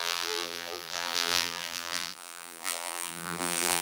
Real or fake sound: fake